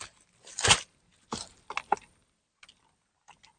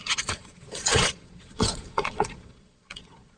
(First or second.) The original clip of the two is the first